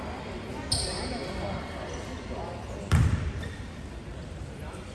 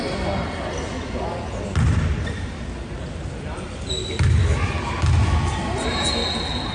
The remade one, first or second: first